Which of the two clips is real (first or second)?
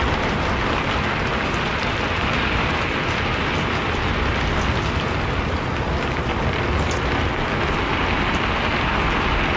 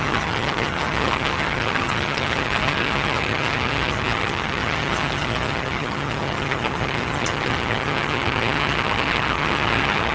first